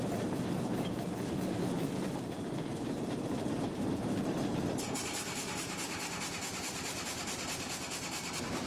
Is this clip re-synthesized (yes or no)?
yes